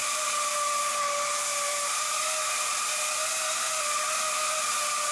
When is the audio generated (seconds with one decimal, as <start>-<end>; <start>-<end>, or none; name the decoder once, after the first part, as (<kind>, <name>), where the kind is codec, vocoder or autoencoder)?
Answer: 1.7-2.2 (vocoder, BigVGAN v2)